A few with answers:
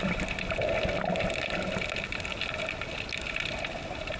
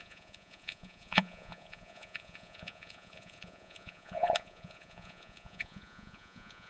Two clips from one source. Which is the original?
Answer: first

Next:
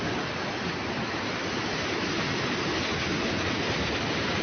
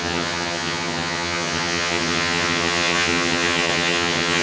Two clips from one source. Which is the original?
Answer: first